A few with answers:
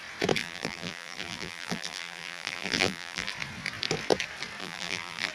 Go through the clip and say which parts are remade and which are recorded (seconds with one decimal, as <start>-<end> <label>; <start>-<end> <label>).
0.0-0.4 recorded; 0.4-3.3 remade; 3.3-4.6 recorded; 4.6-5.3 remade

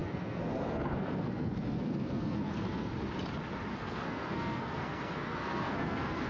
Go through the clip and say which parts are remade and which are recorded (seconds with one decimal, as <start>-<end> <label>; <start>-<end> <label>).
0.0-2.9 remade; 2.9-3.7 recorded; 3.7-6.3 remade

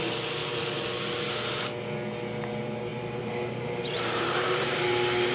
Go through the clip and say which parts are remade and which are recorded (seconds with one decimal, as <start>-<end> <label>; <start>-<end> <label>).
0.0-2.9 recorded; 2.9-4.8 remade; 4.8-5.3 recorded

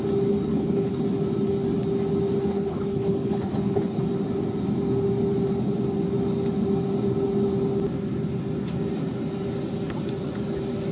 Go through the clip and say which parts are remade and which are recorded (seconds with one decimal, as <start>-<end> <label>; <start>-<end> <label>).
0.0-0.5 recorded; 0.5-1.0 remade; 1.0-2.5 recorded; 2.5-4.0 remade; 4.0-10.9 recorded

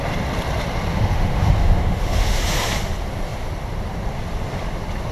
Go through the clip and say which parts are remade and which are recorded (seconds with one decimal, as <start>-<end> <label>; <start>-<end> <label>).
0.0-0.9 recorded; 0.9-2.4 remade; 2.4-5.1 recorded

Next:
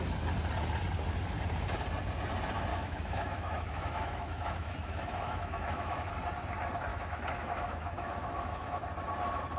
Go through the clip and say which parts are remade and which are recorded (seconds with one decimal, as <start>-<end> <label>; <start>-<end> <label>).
0.0-2.7 recorded; 2.7-6.1 remade; 6.1-6.9 recorded; 6.9-8.8 remade; 8.8-9.6 recorded

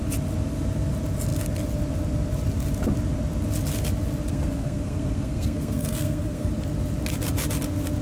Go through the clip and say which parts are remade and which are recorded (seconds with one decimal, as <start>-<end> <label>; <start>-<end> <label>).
0.0-4.3 recorded; 4.3-6.5 remade; 6.5-8.0 recorded

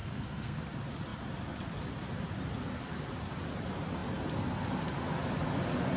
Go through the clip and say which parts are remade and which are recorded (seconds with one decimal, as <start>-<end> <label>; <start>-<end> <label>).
0.0-0.6 remade; 0.6-6.0 recorded